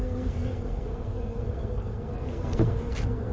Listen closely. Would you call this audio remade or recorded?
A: remade